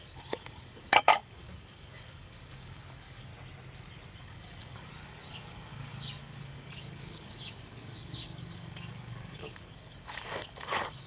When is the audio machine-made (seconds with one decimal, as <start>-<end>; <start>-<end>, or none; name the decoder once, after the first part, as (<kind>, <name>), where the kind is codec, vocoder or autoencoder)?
0.0-3.3 (codec, DAC); 4.2-11.1